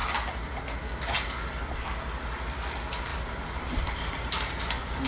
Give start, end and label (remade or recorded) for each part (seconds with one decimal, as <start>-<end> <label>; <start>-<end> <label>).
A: 0.0-3.1 recorded; 3.1-4.6 remade; 4.6-5.1 recorded

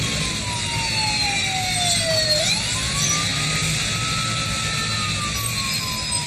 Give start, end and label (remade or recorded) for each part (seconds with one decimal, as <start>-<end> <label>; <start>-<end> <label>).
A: 0.0-6.3 recorded

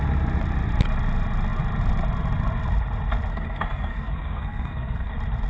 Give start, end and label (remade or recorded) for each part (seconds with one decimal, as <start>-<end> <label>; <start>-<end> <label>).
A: 0.0-3.3 recorded; 3.3-5.1 remade; 5.1-5.5 recorded

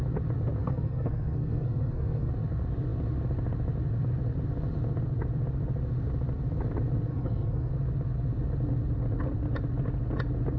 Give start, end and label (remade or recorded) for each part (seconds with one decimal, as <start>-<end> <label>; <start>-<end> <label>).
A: 0.0-0.6 recorded; 0.6-2.3 remade; 2.3-7.1 recorded; 7.1-7.7 remade; 7.7-10.6 recorded

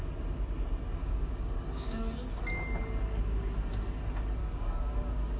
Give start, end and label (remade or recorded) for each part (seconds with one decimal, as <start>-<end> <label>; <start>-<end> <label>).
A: 0.0-1.0 recorded; 1.0-2.4 remade; 2.4-4.4 recorded; 4.4-5.4 remade

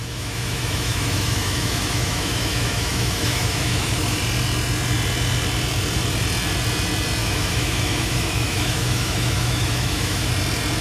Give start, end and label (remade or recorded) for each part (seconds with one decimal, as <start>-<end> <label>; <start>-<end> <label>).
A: 0.0-4.2 remade; 4.2-7.2 recorded; 7.2-10.3 remade; 10.3-10.8 recorded

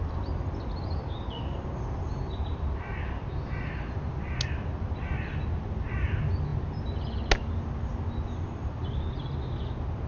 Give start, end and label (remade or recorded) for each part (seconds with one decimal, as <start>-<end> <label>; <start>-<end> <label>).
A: 0.0-10.1 recorded

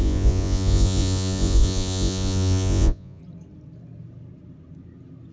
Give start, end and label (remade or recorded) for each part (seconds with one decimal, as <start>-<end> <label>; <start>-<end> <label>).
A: 0.0-3.2 remade; 3.2-5.3 recorded